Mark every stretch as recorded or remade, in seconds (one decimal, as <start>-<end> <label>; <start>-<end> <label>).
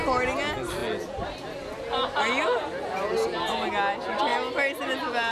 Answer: 0.0-5.3 recorded